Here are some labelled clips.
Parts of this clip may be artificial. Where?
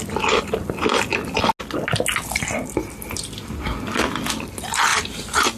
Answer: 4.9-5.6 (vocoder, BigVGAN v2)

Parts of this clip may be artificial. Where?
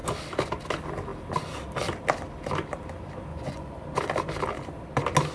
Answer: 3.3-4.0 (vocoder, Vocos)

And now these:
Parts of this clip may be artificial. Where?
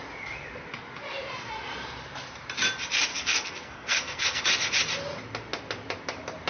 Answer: 3.1-4.4 (codec, SNAC)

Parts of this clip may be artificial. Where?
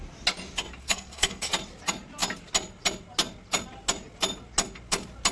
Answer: 0.8-1.5 (codec, SNAC)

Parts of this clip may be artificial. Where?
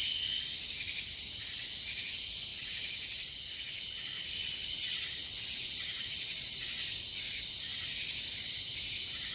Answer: none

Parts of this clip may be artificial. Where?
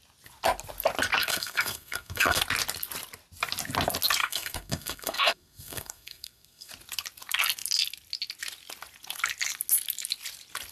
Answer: 1.2-2.4 (codec, SNAC); 4.2-6.7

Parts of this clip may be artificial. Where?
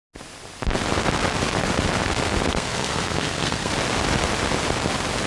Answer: 2.5-3.7 (codec, SNAC)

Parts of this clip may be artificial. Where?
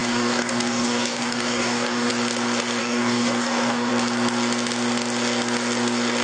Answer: 0.0-2.1 (codec, DAC); 2.8-3.9